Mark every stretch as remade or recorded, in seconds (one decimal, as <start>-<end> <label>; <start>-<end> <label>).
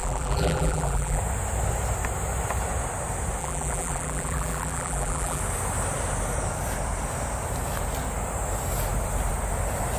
0.0-1.2 remade; 1.2-3.4 recorded; 3.4-5.4 remade; 5.4-10.0 recorded